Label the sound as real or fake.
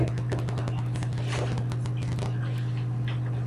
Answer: real